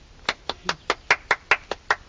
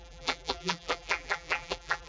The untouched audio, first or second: first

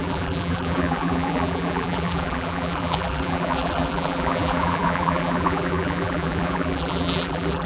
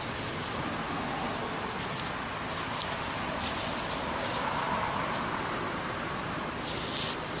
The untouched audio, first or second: second